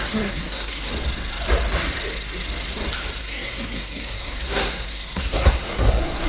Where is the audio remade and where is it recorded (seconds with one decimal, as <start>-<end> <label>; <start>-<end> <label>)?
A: 0.0-0.9 remade; 0.9-3.2 recorded; 3.2-6.3 remade